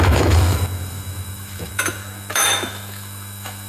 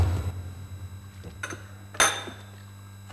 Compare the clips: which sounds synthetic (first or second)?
first